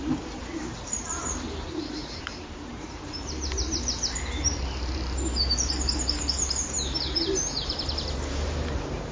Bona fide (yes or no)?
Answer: no